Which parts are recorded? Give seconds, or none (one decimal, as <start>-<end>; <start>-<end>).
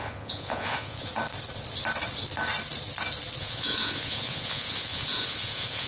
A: 1.1-3.4